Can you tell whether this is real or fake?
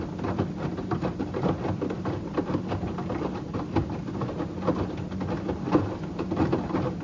real